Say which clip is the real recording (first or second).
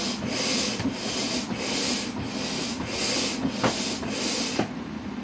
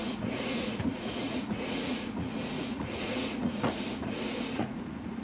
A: first